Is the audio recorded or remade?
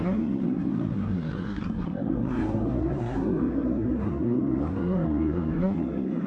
remade